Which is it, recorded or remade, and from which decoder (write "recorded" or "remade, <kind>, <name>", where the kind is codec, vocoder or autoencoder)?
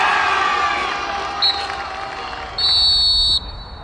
recorded